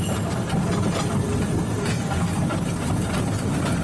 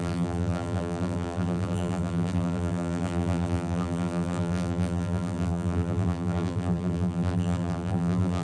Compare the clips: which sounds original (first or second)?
first